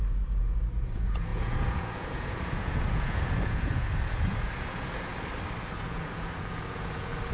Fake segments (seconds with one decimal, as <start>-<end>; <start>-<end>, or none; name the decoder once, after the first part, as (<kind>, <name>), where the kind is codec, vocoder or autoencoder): 0.0-5.1 (vocoder, Vocos); 5.6-7.3